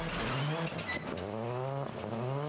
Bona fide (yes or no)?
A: yes